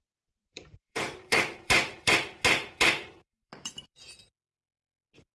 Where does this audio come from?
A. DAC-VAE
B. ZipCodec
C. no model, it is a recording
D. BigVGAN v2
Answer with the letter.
D